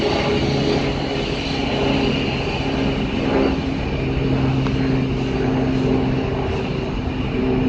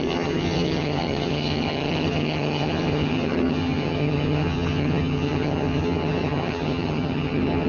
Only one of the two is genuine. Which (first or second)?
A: first